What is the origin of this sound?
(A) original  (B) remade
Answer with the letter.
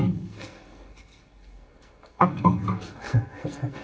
B